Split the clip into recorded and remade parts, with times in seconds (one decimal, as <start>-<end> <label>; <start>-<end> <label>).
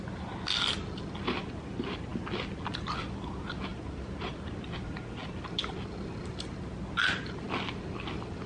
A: 0.0-3.7 recorded; 3.7-4.7 remade; 4.7-8.5 recorded